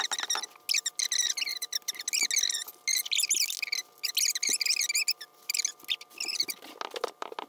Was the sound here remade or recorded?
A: recorded